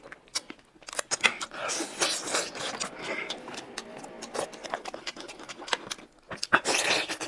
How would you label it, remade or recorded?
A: recorded